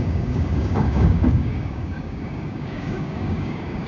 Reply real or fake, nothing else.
fake